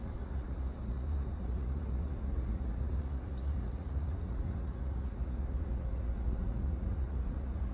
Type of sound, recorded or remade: remade